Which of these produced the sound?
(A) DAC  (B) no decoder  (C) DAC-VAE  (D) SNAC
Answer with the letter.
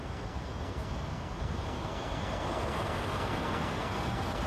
D